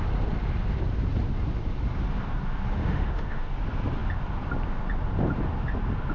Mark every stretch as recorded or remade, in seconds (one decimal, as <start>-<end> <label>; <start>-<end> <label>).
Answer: 0.0-2.8 recorded; 2.8-3.5 remade; 3.5-6.1 recorded